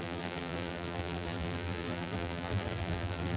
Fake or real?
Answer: fake